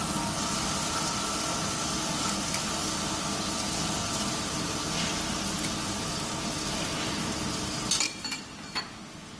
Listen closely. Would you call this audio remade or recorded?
recorded